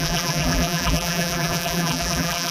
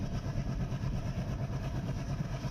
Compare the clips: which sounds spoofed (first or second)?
first